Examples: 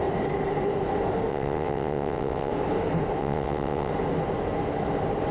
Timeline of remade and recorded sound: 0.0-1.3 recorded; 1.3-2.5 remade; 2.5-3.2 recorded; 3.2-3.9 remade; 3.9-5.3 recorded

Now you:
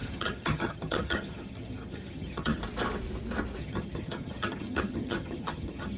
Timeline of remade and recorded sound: 0.0-2.6 remade; 2.6-3.6 recorded; 3.6-6.0 remade

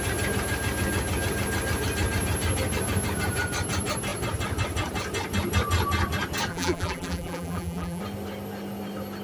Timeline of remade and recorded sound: 0.0-6.5 recorded; 6.5-8.0 remade; 8.0-9.2 recorded

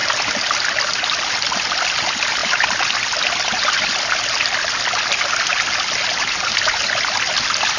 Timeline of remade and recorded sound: 0.0-7.8 recorded

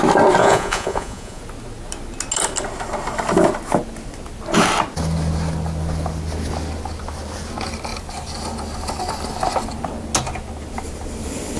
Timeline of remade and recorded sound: 0.0-0.4 recorded; 0.4-1.4 remade; 1.4-11.6 recorded

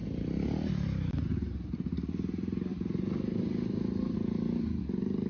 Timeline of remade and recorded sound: 0.0-1.0 remade; 1.0-2.7 recorded; 2.7-4.8 remade; 4.8-5.3 recorded

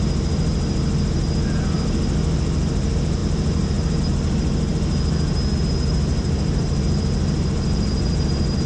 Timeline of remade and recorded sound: 0.0-3.2 recorded; 3.2-4.0 remade; 4.0-6.1 recorded; 6.1-8.7 remade

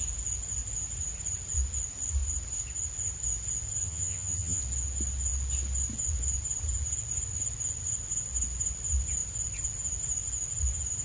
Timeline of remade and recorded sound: 0.0-3.8 recorded; 3.8-4.6 remade; 4.6-11.0 recorded